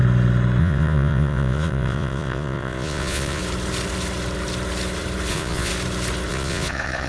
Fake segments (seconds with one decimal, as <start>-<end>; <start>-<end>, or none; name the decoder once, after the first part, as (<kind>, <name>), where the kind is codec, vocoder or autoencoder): 0.6-3.4 (vocoder, Vocos); 5.3-5.7; 6.3-7.1